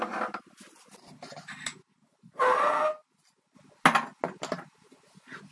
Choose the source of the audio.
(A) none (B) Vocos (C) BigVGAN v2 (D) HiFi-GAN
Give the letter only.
A